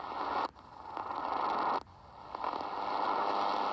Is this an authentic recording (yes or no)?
yes